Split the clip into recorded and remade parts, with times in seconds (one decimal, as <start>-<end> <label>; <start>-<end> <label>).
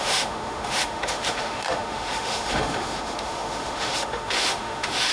0.0-5.1 remade